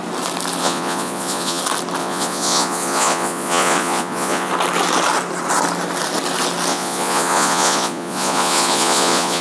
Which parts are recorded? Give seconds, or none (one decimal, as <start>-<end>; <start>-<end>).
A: 0.0-0.6; 1.6-2.0; 4.5-6.7